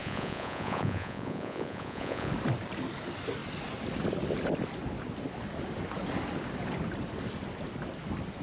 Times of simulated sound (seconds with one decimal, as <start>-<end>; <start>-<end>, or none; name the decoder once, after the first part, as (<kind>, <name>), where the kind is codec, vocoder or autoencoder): 0.0-2.3 (vocoder, Vocos)